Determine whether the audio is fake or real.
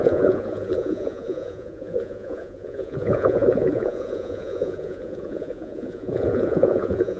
fake